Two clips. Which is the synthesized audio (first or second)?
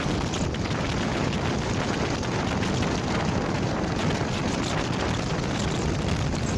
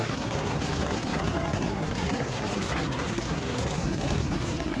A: second